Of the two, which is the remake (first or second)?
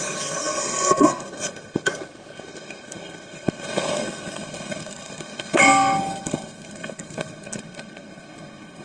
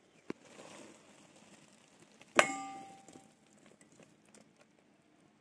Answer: first